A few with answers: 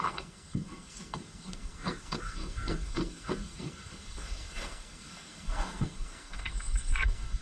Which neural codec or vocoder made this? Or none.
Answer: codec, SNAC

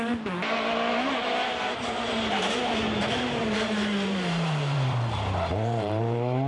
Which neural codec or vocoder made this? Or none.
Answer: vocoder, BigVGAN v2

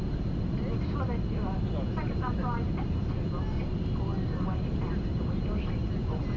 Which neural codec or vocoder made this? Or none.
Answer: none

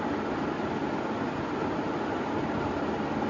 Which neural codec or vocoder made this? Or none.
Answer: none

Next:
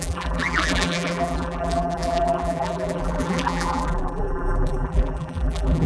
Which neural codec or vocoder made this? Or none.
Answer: vocoder, BigVGAN v2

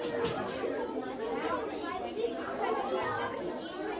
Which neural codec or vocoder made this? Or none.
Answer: none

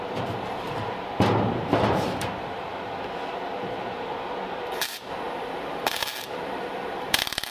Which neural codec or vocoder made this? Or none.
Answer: vocoder, BigVGAN v2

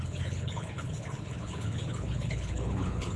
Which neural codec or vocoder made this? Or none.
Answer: codec, HILCodec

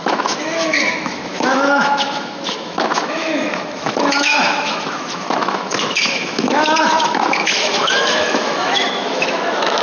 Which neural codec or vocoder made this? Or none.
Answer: autoencoder, DAC-VAE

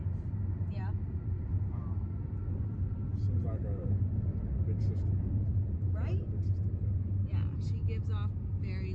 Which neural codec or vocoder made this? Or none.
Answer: none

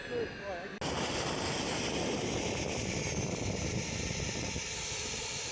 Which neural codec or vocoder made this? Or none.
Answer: none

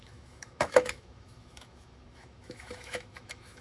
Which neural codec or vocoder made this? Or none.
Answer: autoencoder, DAC-VAE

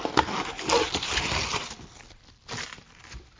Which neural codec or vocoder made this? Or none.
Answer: none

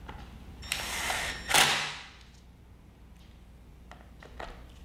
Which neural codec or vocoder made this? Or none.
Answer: none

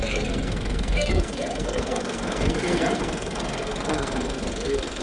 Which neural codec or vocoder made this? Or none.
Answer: codec, SNAC